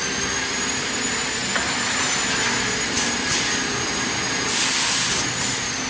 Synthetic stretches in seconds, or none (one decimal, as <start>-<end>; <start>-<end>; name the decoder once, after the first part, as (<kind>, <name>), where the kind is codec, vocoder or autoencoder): none